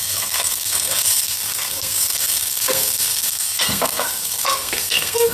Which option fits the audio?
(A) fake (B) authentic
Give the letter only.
A